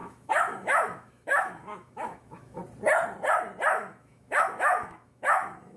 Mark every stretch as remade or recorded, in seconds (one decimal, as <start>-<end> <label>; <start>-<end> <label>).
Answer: 0.0-2.6 remade; 2.6-3.7 recorded; 3.7-5.8 remade